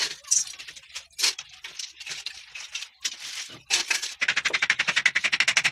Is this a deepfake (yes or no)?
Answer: no